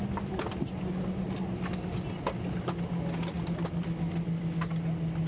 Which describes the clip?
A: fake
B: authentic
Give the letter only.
B